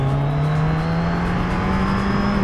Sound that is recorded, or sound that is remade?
recorded